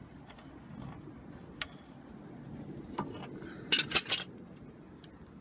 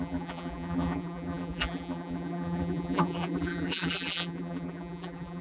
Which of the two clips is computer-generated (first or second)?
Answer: second